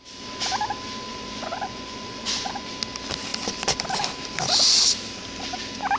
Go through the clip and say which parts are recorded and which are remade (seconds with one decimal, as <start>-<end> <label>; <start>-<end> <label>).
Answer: 0.0-1.1 recorded; 1.1-2.7 remade; 2.7-6.0 recorded